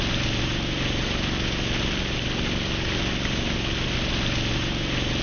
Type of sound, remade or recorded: recorded